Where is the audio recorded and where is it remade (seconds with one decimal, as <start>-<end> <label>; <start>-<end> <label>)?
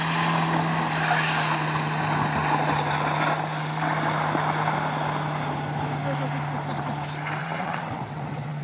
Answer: 0.0-7.4 recorded; 7.4-8.6 remade